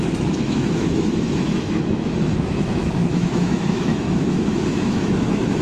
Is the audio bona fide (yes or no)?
no